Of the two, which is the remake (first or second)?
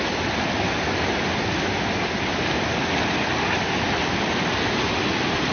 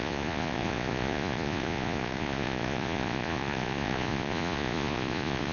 second